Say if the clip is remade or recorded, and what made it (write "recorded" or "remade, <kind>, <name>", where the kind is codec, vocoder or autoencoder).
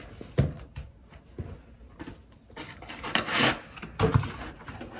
recorded